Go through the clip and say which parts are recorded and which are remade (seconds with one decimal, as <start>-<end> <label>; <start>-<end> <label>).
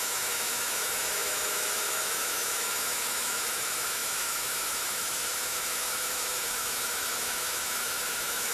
0.0-8.5 remade